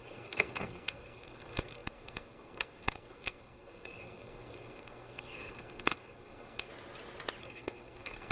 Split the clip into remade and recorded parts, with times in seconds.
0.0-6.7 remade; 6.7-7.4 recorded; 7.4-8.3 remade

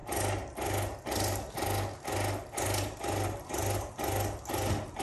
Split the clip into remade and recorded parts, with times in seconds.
0.0-5.0 recorded

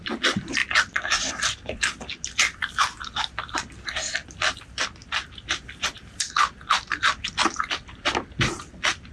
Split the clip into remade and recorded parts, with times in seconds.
0.0-0.6 remade; 0.6-1.3 recorded; 1.3-2.1 remade; 2.1-2.6 recorded; 2.6-9.1 remade